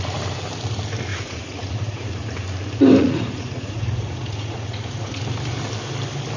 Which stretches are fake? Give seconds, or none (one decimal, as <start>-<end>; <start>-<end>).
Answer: 1.1-2.3; 3.0-5.2